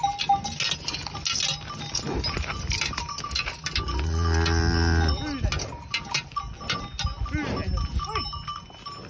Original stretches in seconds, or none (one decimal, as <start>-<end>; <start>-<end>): 0.0-9.1